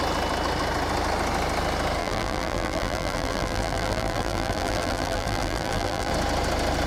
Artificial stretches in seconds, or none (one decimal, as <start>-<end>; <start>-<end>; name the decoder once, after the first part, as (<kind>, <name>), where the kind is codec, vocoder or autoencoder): 2.0-6.1 (vocoder, BigVGAN v2)